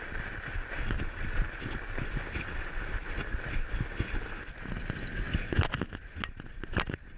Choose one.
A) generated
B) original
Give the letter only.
B